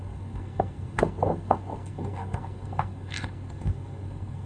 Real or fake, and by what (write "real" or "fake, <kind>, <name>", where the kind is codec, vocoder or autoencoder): fake, codec, SNAC